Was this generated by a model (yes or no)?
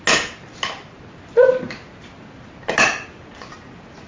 no